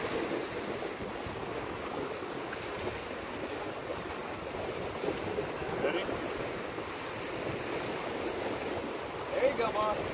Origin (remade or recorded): recorded